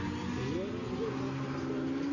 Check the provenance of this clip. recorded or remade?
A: recorded